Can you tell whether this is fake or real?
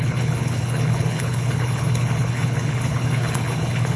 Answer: fake